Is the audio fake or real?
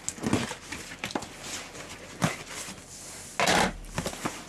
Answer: real